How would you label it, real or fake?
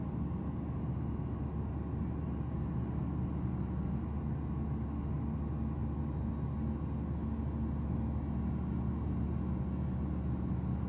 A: real